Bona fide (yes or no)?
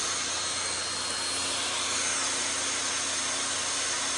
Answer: yes